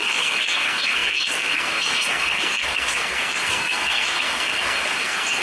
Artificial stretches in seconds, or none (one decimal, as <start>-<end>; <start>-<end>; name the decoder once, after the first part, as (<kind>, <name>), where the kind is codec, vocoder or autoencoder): 0.0-5.4 (codec, SNAC)